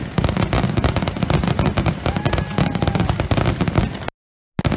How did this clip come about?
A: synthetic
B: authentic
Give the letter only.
B